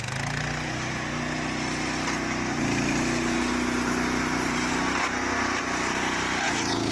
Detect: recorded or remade recorded